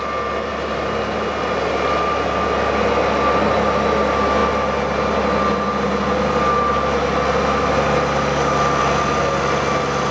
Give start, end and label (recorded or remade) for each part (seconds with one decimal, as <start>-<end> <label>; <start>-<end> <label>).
0.0-0.5 recorded; 0.5-1.3 remade; 1.3-10.1 recorded